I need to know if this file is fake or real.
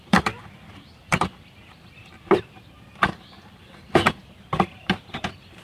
fake